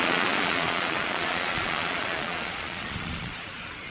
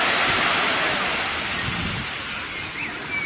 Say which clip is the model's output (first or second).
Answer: first